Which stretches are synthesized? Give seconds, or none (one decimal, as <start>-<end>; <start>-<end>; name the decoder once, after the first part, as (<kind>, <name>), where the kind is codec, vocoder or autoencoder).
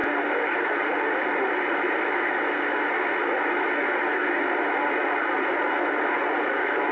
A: 0.0-2.0 (vocoder, BigVGAN v2)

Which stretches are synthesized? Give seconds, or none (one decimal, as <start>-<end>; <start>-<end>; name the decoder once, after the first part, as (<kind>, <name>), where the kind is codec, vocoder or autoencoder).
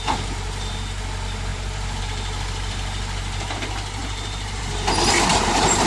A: 1.5-2.0 (vocoder, BigVGAN v2); 4.0-4.6; 5.3-5.9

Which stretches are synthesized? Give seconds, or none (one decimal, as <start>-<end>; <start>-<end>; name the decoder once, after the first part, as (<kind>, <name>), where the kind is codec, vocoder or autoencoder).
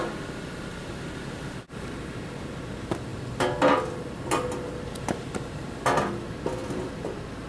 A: none